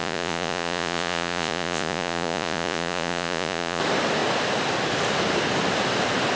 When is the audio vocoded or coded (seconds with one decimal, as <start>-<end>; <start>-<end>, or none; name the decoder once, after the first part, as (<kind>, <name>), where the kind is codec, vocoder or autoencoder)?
0.0-3.8 (vocoder, Vocos)

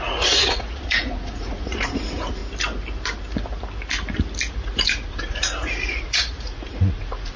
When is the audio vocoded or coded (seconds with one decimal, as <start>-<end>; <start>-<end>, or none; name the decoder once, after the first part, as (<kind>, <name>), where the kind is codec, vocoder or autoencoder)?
0.0-2.4 (vocoder, Vocos); 4.5-7.4